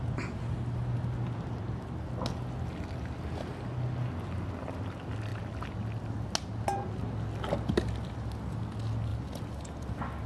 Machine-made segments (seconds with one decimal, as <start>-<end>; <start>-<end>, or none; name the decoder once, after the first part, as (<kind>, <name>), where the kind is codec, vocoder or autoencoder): none